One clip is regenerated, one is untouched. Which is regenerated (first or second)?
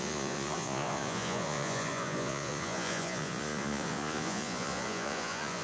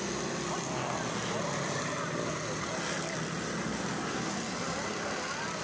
first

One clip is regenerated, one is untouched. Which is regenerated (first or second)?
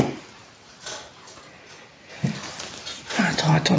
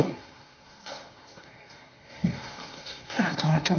second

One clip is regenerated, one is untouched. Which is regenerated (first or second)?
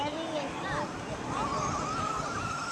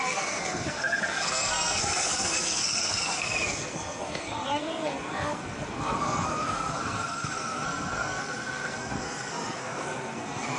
second